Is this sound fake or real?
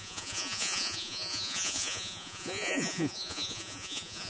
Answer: fake